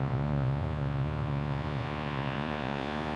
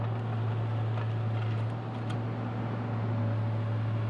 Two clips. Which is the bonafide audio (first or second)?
second